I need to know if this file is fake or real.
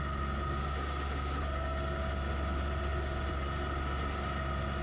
real